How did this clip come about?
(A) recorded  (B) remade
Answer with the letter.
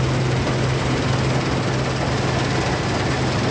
A